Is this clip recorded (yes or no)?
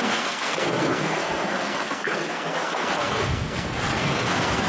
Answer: no